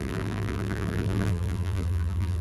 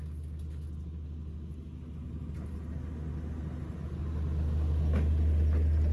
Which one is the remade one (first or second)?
first